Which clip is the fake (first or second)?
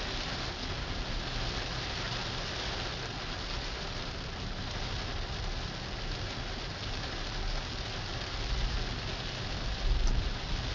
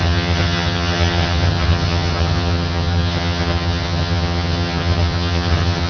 second